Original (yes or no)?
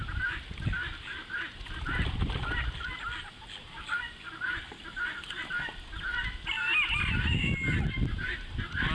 yes